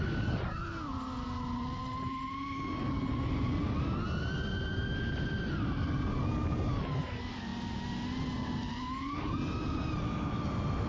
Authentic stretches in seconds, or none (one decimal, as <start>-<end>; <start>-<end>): 0.0-10.9